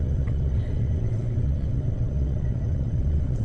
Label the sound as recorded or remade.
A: remade